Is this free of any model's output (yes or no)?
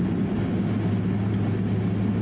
yes